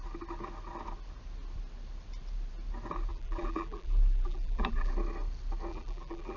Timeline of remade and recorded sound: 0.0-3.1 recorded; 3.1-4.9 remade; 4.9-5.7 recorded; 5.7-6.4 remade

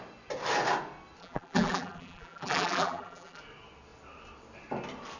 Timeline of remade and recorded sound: 0.0-1.2 recorded; 1.2-3.4 remade; 3.4-5.2 recorded

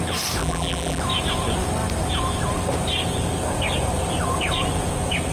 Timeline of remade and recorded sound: 0.0-0.4 recorded; 0.4-1.0 remade; 1.0-5.3 recorded

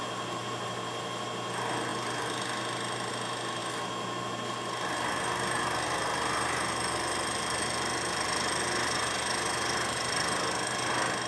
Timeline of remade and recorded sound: 0.0-11.3 recorded

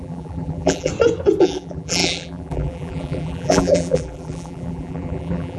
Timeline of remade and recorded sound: 0.0-0.9 remade; 0.9-1.4 recorded; 1.4-5.6 remade

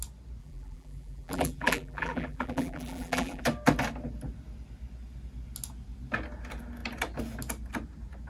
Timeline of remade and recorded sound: 0.0-0.4 recorded; 0.4-3.4 remade; 3.4-8.3 recorded

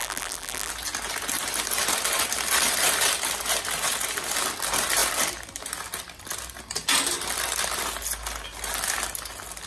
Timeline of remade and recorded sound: 0.0-0.7 remade; 0.7-9.7 recorded